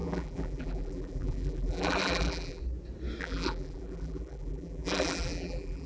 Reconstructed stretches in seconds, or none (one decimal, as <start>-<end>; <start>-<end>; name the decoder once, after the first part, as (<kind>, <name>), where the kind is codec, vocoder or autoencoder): 0.0-2.6 (vocoder, BigVGAN v2); 3.2-5.9